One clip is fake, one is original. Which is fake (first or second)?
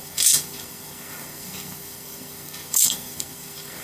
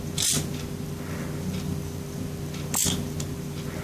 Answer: first